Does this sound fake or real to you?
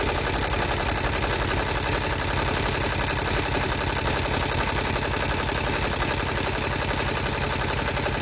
real